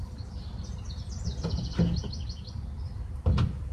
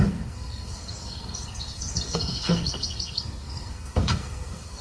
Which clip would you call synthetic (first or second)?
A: second